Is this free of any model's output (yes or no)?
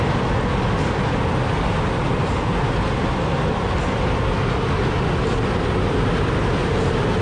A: yes